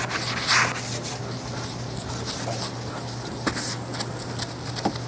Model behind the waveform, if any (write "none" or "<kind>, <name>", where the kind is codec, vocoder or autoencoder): none